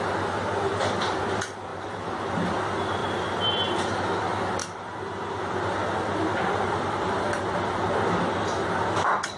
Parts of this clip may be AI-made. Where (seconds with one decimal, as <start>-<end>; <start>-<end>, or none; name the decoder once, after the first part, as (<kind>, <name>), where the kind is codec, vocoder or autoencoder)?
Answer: 1.7-2.5 (vocoder, BigVGAN v2)